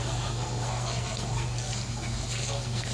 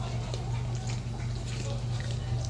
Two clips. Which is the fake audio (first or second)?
first